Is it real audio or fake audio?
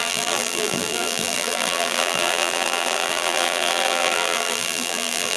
fake